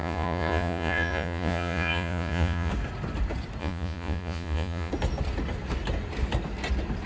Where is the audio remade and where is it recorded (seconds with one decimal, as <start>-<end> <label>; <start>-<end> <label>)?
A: 0.0-2.7 remade; 2.7-3.6 recorded; 3.6-4.9 remade; 4.9-7.1 recorded